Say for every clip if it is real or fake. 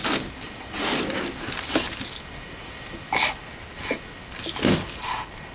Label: real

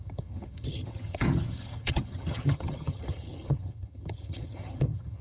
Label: fake